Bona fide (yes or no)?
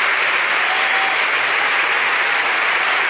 yes